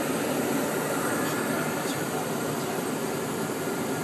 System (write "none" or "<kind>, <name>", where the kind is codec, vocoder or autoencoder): none